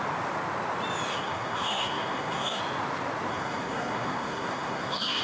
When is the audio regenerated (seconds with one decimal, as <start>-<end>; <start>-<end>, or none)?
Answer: 1.1-2.6; 3.3-5.2

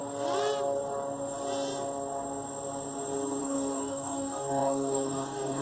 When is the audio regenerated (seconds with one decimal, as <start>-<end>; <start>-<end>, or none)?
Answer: 3.4-5.6